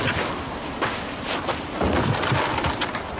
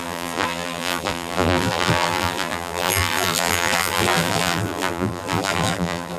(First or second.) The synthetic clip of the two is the second